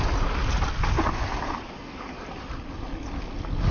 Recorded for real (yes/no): yes